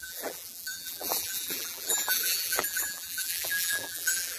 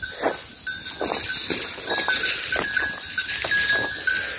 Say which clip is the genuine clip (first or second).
second